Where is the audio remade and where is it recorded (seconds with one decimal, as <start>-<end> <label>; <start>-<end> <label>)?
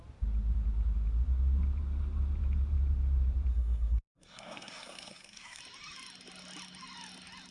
0.0-3.5 recorded; 3.5-5.6 remade; 5.6-7.5 recorded